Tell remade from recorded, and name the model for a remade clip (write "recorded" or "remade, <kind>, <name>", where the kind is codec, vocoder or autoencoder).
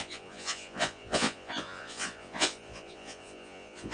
remade, vocoder, Vocos